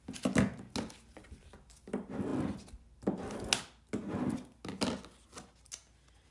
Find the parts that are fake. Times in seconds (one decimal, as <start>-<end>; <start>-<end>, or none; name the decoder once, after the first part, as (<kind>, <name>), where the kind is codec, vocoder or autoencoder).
none